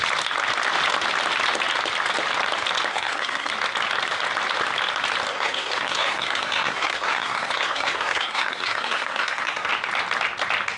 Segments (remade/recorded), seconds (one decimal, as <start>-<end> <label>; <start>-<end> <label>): 0.0-2.9 recorded; 2.9-3.5 remade; 3.5-5.3 recorded; 5.3-9.7 remade; 9.7-10.8 recorded